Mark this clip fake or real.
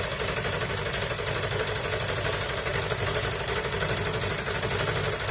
real